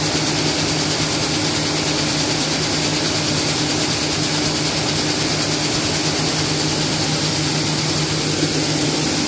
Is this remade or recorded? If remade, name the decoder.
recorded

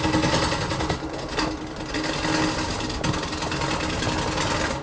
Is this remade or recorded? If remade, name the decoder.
recorded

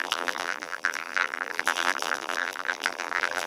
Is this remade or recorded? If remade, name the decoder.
remade, vocoder, BigVGAN v2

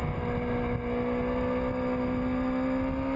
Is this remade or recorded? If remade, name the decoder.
recorded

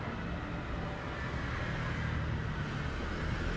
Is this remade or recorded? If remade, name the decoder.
recorded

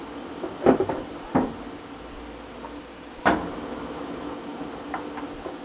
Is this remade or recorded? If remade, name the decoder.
remade, vocoder, BigVGAN v2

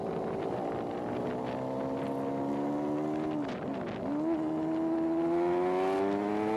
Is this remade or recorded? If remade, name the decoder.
recorded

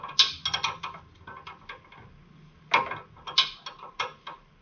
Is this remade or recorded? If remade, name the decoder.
recorded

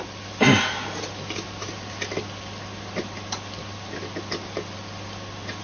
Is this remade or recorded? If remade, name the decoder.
recorded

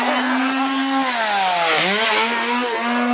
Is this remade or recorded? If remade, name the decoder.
recorded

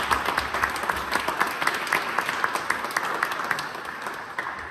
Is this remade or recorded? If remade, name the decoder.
recorded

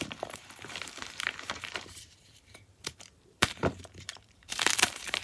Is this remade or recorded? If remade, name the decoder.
remade, vocoder, BigVGAN v2